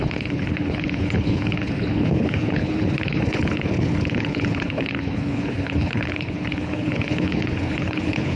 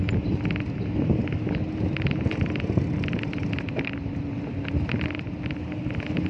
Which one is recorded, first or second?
second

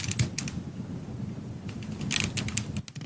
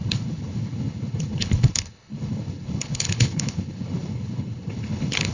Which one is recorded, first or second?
first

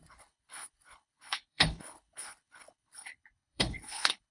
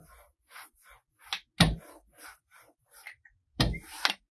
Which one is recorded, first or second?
second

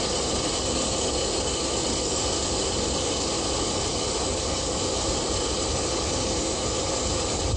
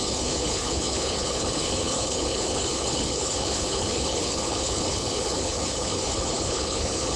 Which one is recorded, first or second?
first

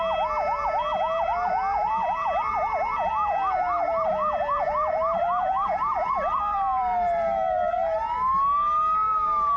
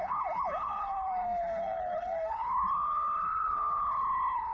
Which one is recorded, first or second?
first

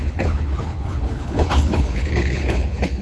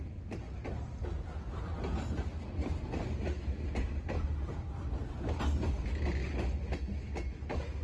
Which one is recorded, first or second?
second